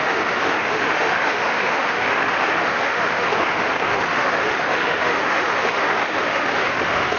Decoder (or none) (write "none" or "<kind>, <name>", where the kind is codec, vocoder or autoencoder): autoencoder, DAC-VAE